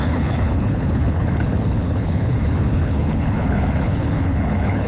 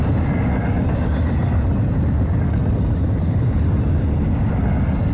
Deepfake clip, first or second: first